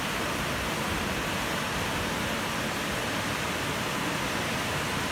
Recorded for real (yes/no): yes